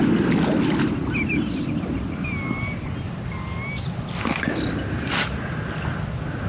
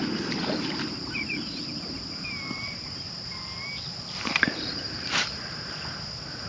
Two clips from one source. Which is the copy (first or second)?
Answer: second